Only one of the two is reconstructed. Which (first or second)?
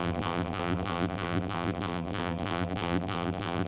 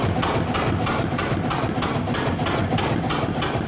first